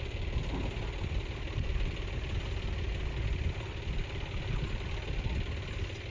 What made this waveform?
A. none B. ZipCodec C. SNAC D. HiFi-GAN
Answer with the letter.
A